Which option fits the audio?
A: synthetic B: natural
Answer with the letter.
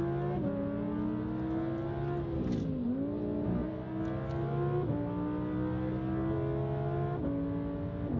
B